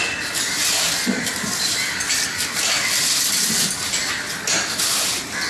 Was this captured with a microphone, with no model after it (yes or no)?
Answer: yes